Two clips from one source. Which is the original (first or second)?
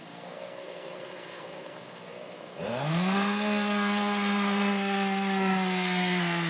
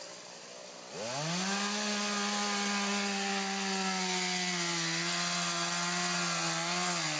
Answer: second